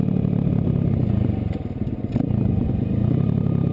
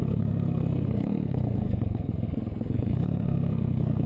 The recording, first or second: first